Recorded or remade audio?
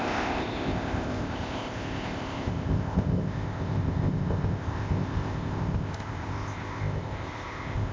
remade